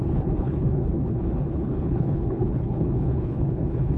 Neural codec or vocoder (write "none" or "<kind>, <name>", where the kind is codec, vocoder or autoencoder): codec, HILCodec